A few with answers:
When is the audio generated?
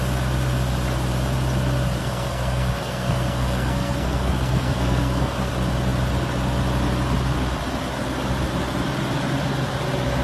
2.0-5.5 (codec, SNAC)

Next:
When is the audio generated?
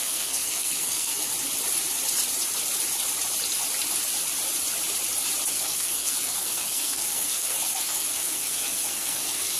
0.0-1.3 (codec, SNAC); 5.5-9.6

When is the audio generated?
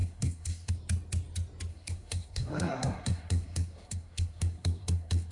0.0-0.7 (codec, SNAC); 1.7-5.3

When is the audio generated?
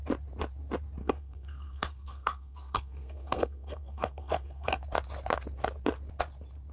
1.0-4.8 (codec, SNAC)